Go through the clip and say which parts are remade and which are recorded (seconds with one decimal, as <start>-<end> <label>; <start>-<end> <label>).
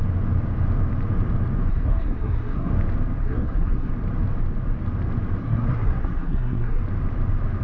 0.0-1.7 recorded; 1.7-2.7 remade; 2.7-3.2 recorded; 3.2-3.9 remade; 3.9-5.4 recorded; 5.4-6.8 remade; 6.8-7.6 recorded